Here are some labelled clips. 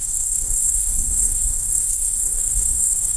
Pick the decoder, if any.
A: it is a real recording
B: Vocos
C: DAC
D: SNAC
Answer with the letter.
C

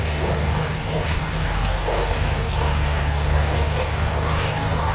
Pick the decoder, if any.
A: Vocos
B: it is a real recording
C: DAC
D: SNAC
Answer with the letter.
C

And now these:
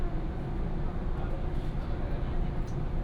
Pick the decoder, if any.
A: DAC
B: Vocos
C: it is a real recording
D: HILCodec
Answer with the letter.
C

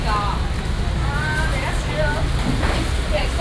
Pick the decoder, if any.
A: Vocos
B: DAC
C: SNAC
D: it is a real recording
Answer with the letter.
D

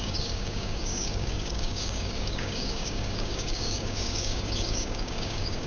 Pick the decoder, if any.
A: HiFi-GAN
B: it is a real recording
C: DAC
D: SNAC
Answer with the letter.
C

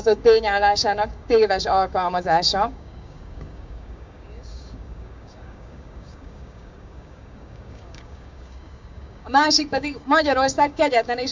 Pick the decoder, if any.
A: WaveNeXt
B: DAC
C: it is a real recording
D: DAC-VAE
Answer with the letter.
B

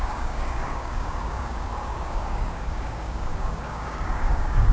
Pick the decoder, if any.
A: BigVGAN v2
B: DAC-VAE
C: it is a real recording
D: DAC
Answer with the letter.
D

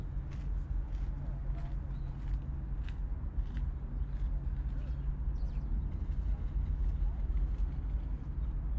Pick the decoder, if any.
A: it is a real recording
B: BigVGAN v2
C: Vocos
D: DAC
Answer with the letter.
A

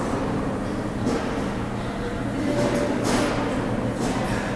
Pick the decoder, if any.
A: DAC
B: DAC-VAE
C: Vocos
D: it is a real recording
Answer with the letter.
D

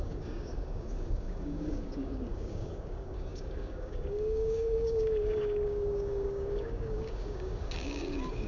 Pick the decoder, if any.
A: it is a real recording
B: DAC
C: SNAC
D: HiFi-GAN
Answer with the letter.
B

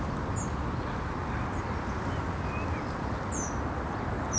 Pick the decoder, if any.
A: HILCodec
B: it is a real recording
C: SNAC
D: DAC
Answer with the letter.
B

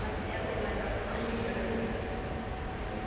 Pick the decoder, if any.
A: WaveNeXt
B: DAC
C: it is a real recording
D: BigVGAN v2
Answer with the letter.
C